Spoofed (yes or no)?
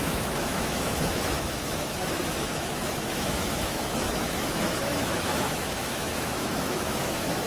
yes